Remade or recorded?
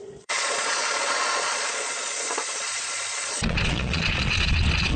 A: remade